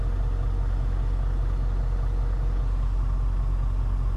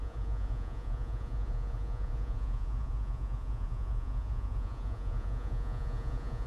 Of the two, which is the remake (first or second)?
second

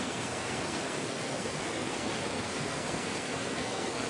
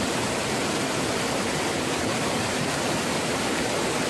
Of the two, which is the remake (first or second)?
first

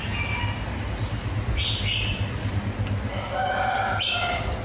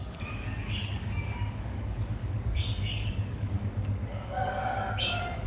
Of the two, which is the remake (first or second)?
second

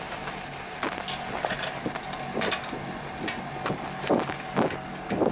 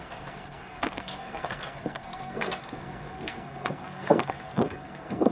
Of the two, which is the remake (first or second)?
second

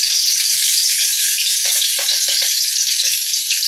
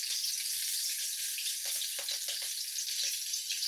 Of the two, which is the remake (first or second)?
first